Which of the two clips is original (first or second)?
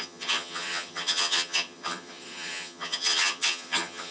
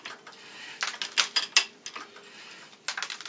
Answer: second